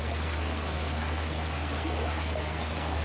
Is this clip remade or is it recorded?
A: remade